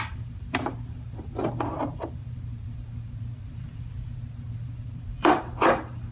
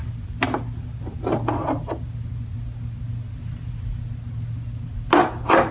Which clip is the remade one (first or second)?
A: first